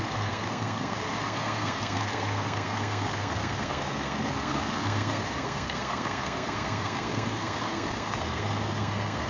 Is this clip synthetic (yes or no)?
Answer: yes